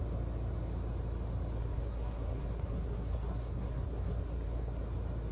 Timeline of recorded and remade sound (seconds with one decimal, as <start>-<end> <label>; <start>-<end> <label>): 0.0-1.6 recorded; 1.6-4.8 remade; 4.8-5.3 recorded